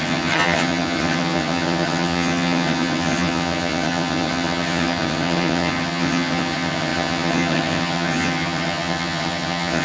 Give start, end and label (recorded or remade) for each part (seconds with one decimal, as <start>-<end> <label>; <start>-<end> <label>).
0.0-9.8 remade